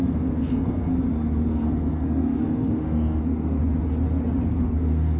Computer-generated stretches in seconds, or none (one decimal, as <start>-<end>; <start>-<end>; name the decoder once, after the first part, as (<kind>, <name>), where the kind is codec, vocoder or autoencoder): 0.0-0.9 (codec, SNAC); 1.5-3.6; 4.5-5.2